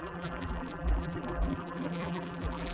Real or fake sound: fake